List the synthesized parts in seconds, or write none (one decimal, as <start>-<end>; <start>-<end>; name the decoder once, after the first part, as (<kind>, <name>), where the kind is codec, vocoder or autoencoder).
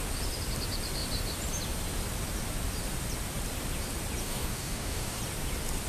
4.2-5.2 (codec, DAC)